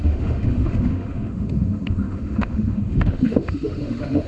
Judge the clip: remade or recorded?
remade